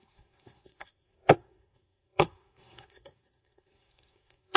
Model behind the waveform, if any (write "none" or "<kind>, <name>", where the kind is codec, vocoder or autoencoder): codec, SNAC